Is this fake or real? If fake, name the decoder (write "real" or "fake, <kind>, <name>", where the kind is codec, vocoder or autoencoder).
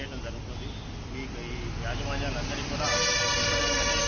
real